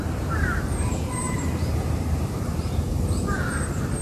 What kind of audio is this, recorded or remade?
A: remade